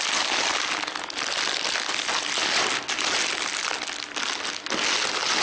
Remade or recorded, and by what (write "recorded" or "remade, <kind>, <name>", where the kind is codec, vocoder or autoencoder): recorded